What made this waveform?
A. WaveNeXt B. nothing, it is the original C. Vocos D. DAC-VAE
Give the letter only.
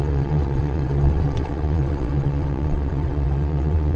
A